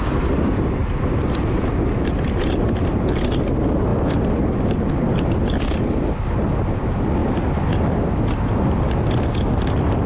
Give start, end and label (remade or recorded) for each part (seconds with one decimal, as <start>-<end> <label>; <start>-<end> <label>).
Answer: 0.0-10.1 recorded